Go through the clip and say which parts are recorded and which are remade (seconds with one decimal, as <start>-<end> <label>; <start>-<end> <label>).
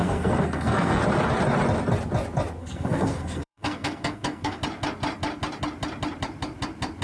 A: 0.0-1.0 remade; 1.0-2.6 recorded; 2.6-4.6 remade; 4.6-7.0 recorded